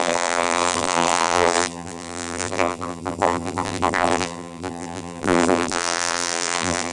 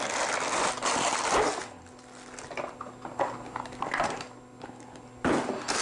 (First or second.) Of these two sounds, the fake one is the first